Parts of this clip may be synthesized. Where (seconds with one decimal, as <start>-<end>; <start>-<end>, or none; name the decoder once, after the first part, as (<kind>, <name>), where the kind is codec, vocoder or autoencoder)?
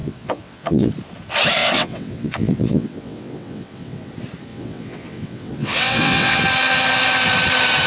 0.0-0.9 (vocoder, WaveNeXt); 1.6-4.1; 4.5-6.4